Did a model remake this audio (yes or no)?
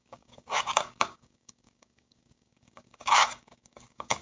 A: yes